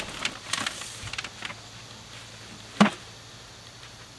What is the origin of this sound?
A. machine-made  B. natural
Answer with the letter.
B